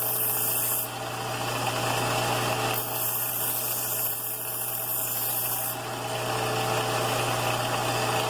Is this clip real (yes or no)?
yes